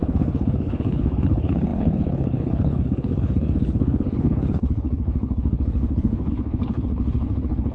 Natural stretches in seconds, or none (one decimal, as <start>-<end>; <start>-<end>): none